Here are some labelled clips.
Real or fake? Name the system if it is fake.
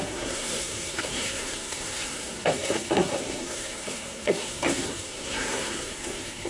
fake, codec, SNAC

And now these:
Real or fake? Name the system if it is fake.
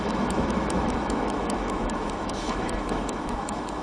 fake, autoencoder, DAC-VAE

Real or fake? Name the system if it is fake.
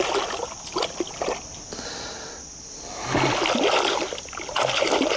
real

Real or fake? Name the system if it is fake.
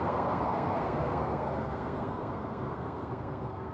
fake, codec, SNAC